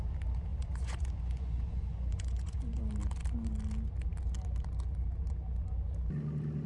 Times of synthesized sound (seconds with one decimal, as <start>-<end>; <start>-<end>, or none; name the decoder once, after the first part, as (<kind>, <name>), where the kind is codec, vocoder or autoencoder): 0.5-2.8 (vocoder, Vocos)